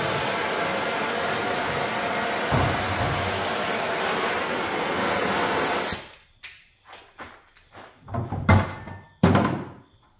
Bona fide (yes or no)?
yes